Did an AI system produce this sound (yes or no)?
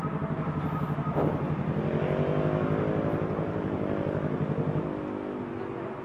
no